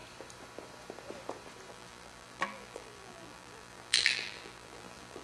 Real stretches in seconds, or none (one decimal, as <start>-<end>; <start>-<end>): 0.0-1.7